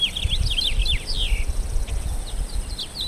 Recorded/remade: recorded